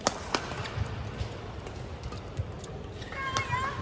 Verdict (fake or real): real